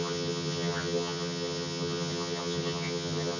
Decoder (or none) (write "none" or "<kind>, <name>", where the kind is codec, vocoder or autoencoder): vocoder, HiFi-GAN